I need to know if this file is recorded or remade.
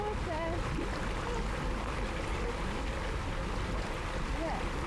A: recorded